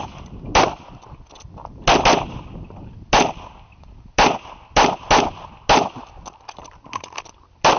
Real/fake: real